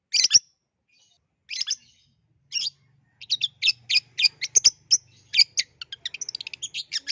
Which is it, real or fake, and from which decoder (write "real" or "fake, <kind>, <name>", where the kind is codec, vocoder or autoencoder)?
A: real